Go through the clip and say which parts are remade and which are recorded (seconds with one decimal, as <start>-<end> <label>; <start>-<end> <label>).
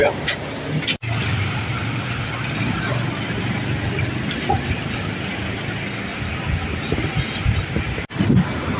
0.0-5.3 remade; 5.3-8.8 recorded